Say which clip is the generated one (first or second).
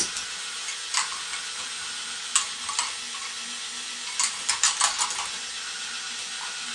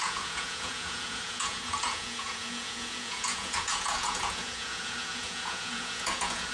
second